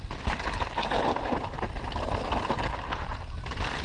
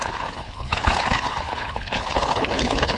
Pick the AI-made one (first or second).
second